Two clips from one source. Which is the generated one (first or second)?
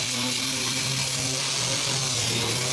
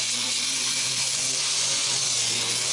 second